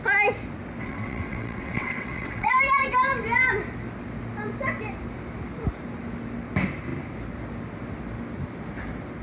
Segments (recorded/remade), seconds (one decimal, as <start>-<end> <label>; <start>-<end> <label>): 0.0-0.8 recorded; 0.8-2.5 remade; 2.5-9.2 recorded